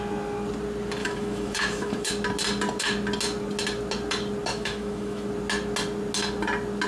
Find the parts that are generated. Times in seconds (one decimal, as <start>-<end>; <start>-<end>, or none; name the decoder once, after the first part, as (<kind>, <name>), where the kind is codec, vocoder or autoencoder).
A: 1.0-2.1 (autoencoder, DAC-VAE); 4.5-5.3